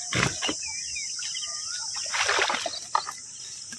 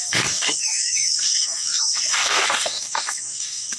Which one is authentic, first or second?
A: first